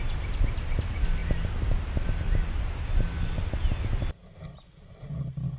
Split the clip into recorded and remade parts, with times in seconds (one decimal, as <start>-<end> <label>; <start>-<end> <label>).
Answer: 0.0-5.6 recorded